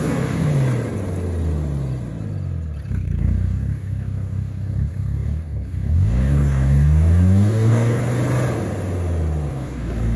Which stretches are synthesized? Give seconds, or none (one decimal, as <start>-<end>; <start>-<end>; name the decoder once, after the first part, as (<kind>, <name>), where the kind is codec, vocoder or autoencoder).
0.0-0.5 (codec, DAC); 2.9-8.0; 9.5-10.2